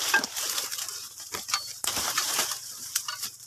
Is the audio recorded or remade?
remade